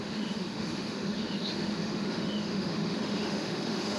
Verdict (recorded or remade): remade